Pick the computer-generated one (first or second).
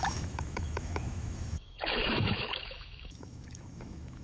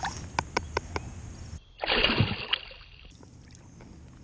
first